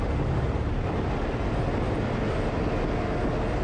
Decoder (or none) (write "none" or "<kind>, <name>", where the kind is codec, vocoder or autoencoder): none